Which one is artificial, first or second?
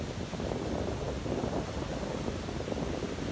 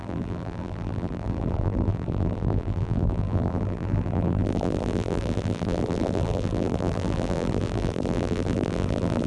second